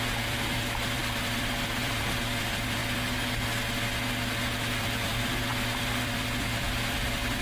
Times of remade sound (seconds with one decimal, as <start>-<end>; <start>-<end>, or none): 0.0-2.8; 4.8-7.4